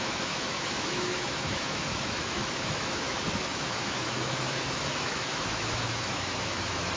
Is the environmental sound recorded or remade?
remade